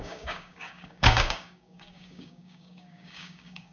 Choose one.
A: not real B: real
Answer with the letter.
A